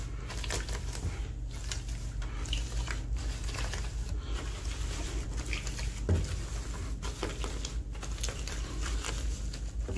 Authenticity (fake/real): real